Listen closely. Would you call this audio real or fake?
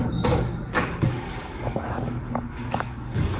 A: fake